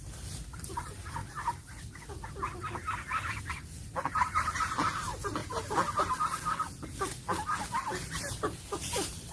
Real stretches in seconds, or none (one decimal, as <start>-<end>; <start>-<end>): 1.2-4.1; 5.4-7.6